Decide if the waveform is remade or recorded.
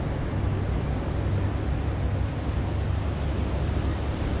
recorded